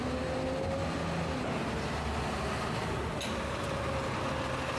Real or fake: real